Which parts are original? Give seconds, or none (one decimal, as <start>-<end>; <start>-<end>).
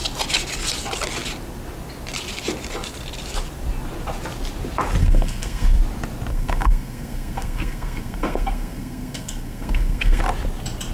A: 0.0-5.0; 5.8-6.3; 10.2-10.9